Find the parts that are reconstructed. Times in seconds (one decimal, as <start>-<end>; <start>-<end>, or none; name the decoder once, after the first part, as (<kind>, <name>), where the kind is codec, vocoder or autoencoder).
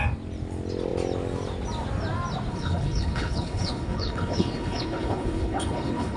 2.5-6.2 (codec, HILCodec)